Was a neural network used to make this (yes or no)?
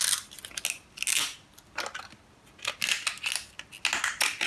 no